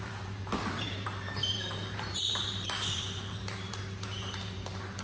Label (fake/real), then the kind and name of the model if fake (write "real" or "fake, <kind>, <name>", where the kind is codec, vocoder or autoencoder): fake, vocoder, BigVGAN v2